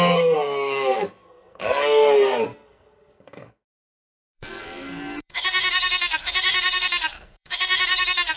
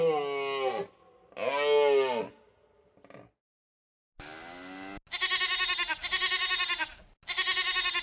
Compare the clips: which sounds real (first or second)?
second